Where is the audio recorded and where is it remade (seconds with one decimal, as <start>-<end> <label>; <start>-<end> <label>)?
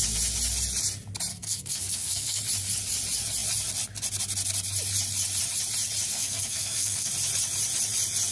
0.0-1.3 recorded; 1.3-2.4 remade; 2.4-6.1 recorded; 6.1-7.1 remade; 7.1-8.3 recorded